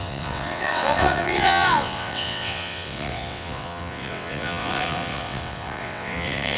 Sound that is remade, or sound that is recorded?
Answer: remade